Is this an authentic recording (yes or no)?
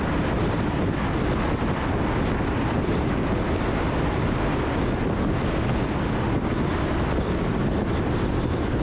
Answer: yes